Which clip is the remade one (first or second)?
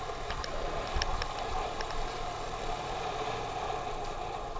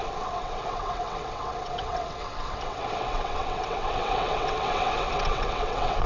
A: second